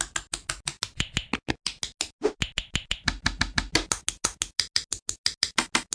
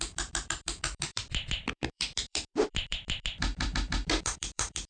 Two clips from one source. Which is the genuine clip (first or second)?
first